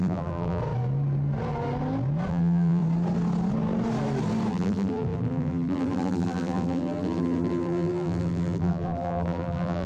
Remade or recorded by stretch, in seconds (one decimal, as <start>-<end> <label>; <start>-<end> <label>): 0.0-0.6 remade; 0.6-2.3 recorded; 2.3-2.8 remade; 2.8-4.5 recorded; 4.5-9.9 remade